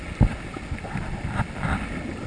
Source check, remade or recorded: recorded